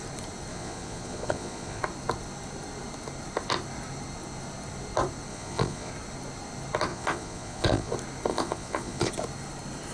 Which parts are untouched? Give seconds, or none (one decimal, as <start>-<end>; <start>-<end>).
0.0-0.5; 1.8-5.3; 5.9-6.9; 7.9-8.3; 9.1-9.9